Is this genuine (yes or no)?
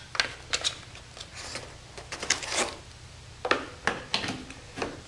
yes